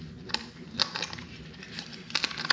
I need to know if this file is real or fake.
real